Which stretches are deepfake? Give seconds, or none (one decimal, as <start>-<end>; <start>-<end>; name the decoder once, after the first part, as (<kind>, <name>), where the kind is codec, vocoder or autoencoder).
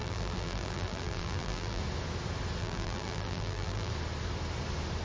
0.0-1.8 (vocoder, BigVGAN v2); 2.6-3.9